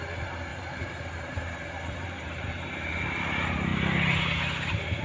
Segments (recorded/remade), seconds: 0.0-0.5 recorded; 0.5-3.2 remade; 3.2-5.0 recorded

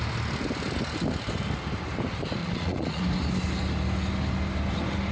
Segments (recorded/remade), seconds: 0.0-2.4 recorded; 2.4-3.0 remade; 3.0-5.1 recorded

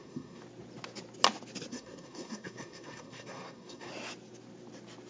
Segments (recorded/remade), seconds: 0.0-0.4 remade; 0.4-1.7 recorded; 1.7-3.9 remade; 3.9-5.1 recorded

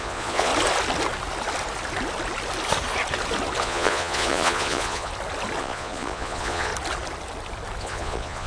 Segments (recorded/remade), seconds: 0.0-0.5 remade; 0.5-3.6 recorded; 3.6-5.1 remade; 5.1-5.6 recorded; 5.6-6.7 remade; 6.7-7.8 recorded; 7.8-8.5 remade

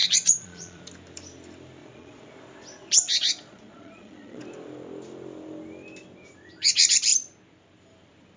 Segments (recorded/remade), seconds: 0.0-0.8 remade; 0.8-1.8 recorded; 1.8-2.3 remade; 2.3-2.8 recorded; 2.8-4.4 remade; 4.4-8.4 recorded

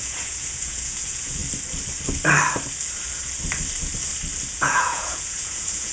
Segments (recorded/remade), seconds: 0.0-1.4 remade; 1.4-4.5 recorded; 4.5-5.9 remade